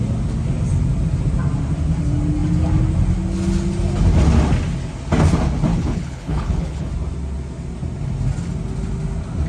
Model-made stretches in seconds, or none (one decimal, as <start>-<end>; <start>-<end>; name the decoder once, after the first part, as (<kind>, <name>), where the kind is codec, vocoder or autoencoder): 5.7-6.9 (codec, HILCodec)